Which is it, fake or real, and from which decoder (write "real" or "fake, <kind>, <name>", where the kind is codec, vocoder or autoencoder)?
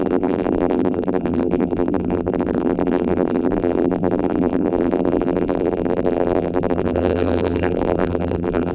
fake, vocoder, BigVGAN v2